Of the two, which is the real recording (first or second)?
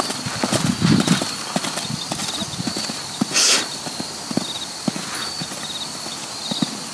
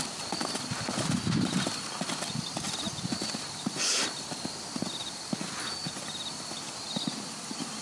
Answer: first